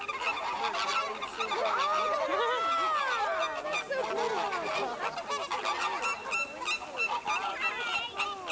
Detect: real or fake real